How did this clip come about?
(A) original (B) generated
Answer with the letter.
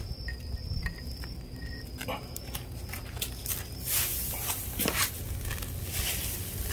A